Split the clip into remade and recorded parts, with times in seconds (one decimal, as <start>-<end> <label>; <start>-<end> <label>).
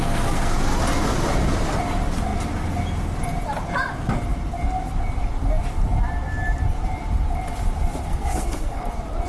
0.0-0.5 remade; 0.5-8.1 recorded; 8.1-8.9 remade; 8.9-9.3 recorded